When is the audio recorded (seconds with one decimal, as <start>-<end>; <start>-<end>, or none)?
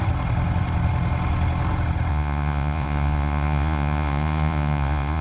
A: 0.0-2.1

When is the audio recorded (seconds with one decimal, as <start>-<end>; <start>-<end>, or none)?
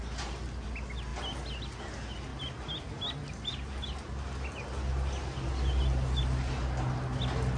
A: 0.0-7.6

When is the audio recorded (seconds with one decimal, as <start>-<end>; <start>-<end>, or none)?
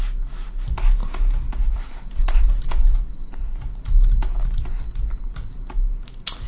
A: 0.0-1.6; 3.6-6.5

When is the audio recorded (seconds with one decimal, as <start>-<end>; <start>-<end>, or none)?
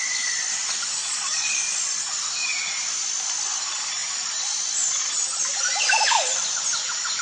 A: 0.0-1.0; 1.6-7.2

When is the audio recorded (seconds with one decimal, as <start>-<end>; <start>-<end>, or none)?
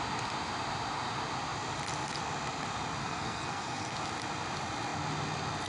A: 0.0-3.0; 3.9-5.7